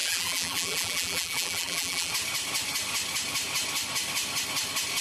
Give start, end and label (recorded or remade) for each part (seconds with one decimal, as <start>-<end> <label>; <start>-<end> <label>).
0.0-2.1 remade; 2.1-5.0 recorded